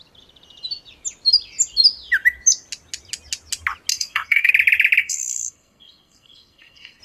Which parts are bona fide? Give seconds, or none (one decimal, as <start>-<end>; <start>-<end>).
0.0-3.9; 4.5-5.0